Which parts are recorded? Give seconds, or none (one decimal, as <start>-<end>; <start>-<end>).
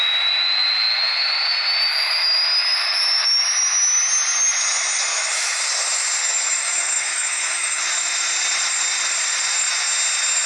0.0-5.1; 5.6-6.2; 7.8-10.5